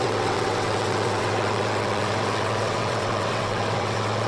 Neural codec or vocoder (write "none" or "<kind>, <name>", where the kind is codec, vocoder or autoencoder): vocoder, WaveNeXt